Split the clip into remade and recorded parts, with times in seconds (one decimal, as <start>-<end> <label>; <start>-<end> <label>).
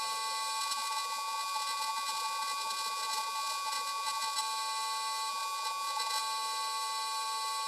0.0-0.6 recorded; 0.6-4.4 remade; 4.4-5.3 recorded; 5.3-6.2 remade; 6.2-7.7 recorded